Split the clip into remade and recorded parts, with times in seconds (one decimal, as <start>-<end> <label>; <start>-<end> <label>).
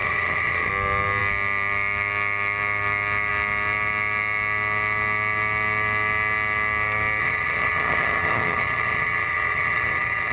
0.0-0.7 remade; 0.7-7.2 recorded; 7.2-10.3 remade